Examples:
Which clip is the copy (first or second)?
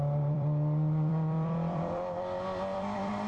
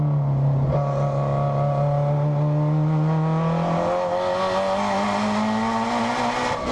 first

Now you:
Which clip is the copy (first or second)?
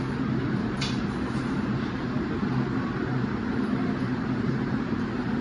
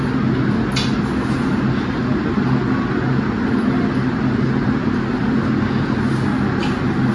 first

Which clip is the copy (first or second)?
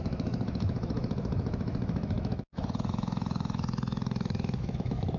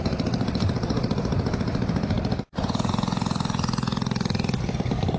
first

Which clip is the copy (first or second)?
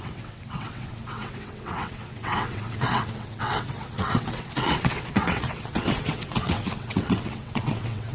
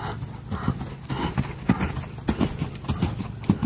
first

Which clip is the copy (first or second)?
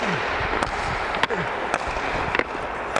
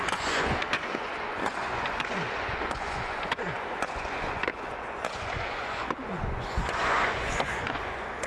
second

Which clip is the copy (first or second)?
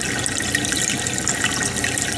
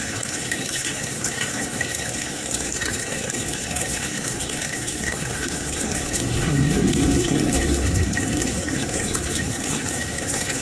second